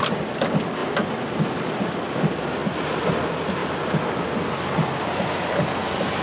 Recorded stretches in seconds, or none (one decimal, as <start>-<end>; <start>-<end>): 0.0-6.2